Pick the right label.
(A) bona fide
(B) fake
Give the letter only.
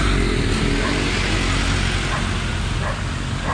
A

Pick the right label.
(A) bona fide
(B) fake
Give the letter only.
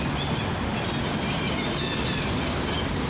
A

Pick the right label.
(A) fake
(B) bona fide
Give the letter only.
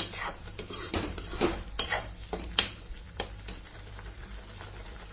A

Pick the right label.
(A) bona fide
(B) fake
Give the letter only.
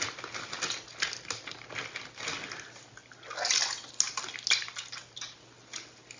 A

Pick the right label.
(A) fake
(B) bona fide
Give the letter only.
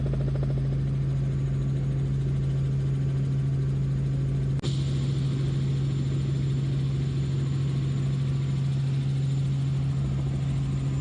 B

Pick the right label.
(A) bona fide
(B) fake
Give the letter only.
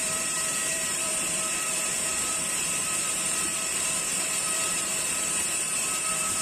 B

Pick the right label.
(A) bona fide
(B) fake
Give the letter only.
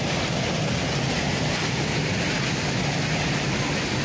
A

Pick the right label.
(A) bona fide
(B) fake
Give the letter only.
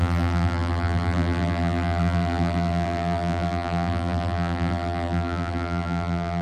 B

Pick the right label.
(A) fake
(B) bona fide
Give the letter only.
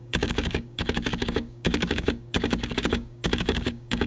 A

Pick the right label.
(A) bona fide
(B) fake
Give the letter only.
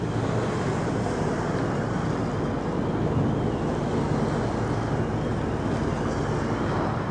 A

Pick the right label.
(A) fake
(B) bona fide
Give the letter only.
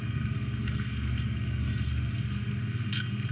A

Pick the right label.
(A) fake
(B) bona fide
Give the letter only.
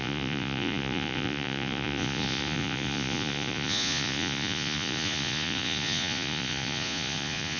A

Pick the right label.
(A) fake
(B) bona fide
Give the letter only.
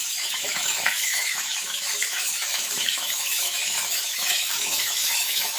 A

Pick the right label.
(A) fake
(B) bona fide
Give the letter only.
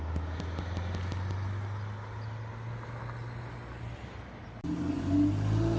B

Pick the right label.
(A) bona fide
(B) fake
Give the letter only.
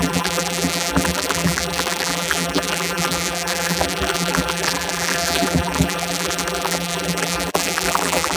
B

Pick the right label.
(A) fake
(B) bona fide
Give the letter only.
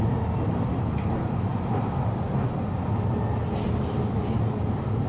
B